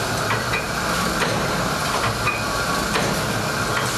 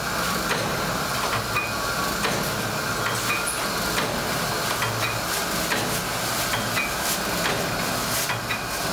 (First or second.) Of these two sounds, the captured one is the second